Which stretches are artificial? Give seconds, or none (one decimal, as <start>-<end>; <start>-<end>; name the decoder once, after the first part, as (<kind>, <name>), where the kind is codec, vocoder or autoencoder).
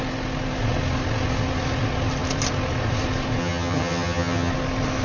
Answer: 3.4-4.5 (vocoder, HiFi-GAN)